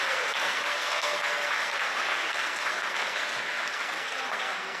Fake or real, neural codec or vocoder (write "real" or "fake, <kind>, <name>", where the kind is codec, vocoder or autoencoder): fake, codec, SNAC